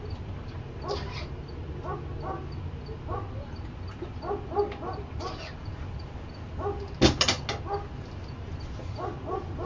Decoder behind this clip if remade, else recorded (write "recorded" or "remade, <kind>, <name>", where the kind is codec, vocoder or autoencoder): recorded